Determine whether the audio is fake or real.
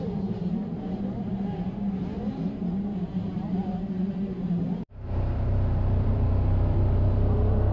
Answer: fake